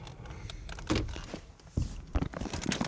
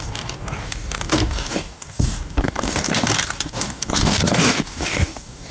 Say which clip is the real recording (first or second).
first